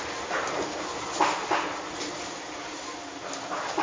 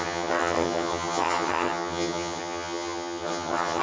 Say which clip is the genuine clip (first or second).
first